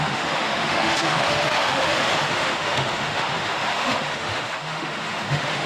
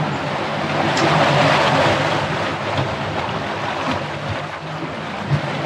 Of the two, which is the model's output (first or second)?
first